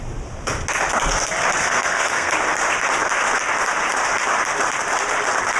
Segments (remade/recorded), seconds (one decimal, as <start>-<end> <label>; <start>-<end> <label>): 0.0-1.6 recorded; 1.6-2.3 remade; 2.3-5.6 recorded